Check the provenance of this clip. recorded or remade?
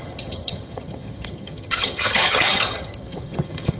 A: remade